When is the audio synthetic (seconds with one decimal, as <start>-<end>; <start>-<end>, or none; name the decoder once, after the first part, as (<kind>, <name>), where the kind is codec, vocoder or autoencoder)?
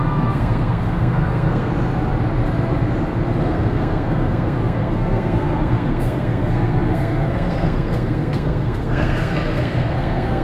0.0-1.7 (codec, SNAC); 3.4-10.4